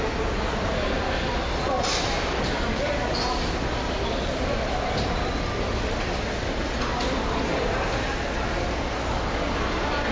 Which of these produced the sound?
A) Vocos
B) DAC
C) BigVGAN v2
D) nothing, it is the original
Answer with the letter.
D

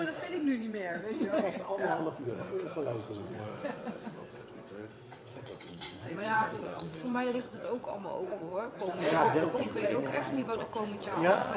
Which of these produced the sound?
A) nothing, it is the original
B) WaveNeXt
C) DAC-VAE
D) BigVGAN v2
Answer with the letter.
B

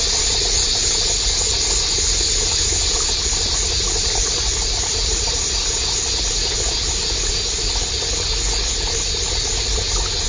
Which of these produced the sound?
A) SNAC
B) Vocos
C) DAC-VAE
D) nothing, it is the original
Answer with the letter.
D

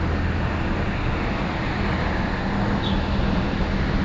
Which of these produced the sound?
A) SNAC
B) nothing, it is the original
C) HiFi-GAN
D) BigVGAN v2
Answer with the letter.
B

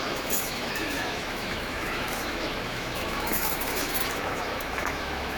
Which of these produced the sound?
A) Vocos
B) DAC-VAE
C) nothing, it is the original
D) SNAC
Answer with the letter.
B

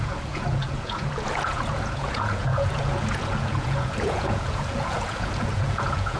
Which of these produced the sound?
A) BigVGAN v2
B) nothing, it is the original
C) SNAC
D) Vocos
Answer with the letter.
D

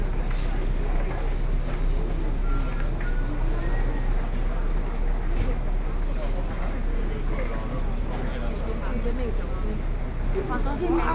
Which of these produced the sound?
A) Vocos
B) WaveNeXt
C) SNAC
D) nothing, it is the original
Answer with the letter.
D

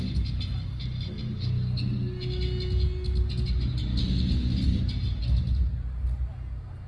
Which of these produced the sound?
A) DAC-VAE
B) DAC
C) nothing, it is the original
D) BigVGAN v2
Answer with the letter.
C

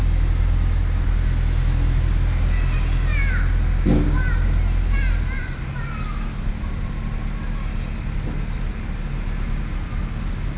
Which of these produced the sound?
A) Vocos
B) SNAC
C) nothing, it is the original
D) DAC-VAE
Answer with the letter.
C